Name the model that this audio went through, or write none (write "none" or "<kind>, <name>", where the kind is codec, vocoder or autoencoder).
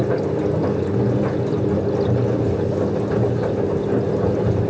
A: none